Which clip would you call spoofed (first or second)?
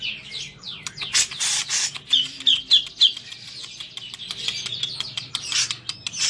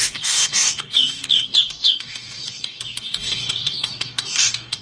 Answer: second